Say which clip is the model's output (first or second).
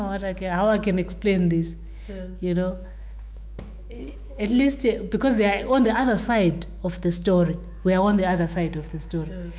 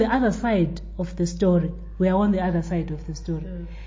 first